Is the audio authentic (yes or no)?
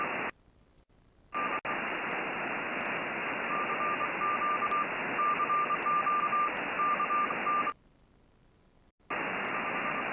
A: yes